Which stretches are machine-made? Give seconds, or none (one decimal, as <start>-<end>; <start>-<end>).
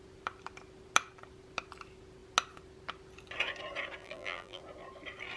4.0-4.6